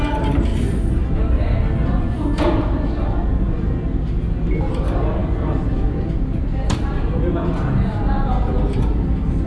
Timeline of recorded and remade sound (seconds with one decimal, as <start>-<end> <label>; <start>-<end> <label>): 0.0-9.5 recorded